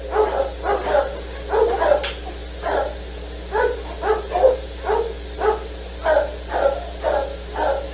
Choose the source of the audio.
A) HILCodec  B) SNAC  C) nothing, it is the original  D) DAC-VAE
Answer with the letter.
C